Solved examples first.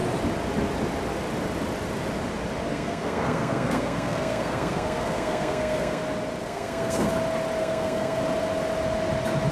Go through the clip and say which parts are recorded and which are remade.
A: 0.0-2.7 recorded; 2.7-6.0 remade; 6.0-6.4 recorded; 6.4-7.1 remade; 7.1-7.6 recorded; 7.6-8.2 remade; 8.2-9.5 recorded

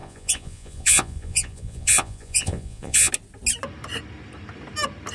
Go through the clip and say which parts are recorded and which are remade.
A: 0.0-3.1 remade; 3.1-5.1 recorded

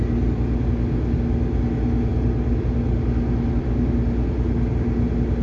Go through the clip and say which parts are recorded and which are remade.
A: 0.0-5.4 recorded

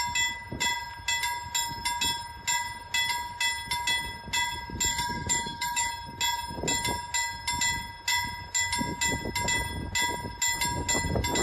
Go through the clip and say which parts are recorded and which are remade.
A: 0.0-4.9 recorded; 4.9-5.9 remade; 5.9-11.4 recorded